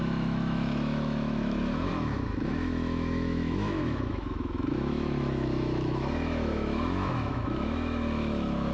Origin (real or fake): fake